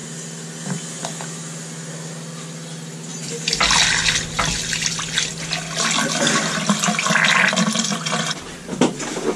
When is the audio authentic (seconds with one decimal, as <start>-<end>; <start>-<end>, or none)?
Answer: 0.0-9.4

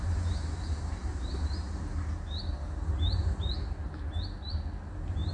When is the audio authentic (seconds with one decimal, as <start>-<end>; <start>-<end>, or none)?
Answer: 0.0-5.3

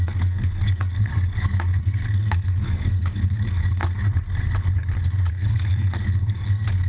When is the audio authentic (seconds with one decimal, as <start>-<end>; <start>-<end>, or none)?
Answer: 1.1-1.8; 3.8-5.3

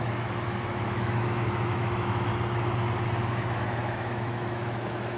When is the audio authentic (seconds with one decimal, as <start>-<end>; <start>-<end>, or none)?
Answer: 2.3-3.3

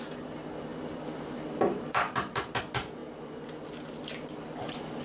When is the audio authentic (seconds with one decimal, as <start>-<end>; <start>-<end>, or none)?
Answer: 0.0-0.7; 2.6-5.0

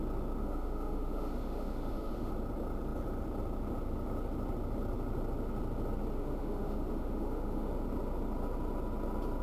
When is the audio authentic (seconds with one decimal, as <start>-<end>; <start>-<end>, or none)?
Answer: 0.0-0.4; 2.3-6.2; 7.7-9.4

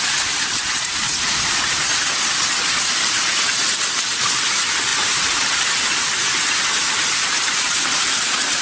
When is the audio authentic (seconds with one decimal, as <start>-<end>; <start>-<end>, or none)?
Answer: none